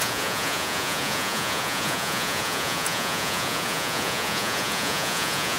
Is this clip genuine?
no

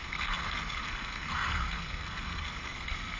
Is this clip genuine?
no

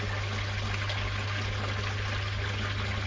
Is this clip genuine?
yes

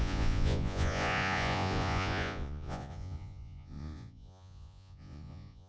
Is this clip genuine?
no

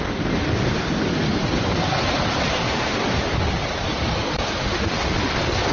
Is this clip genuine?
yes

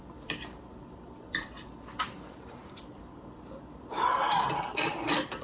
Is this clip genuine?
no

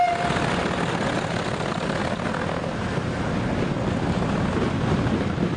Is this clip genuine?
yes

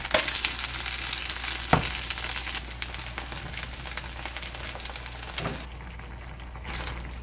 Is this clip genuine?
yes